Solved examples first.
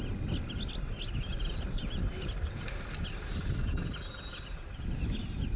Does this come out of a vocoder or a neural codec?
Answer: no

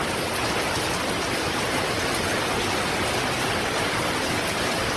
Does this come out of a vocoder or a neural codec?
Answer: no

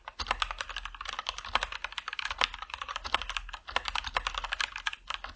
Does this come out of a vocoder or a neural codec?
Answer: no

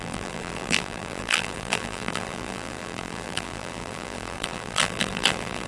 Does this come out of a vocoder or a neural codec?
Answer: yes